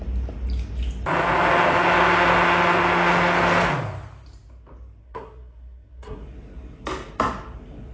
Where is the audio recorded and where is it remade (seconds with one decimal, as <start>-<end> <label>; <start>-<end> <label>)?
0.0-5.0 recorded; 5.0-6.2 remade; 6.2-7.9 recorded